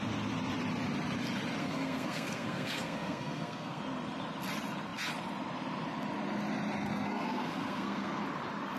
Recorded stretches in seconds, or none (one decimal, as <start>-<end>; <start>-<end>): 0.0-1.6; 3.8-6.9; 8.2-8.8